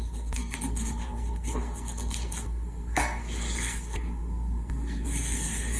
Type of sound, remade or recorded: remade